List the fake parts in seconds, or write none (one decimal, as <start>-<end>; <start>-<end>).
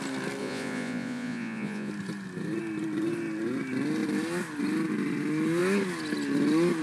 0.4-1.9